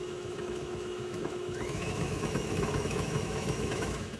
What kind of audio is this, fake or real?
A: fake